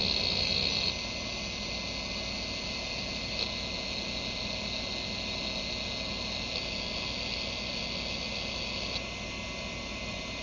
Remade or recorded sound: recorded